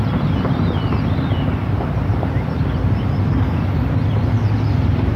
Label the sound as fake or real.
real